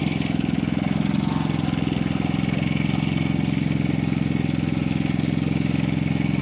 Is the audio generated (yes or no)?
no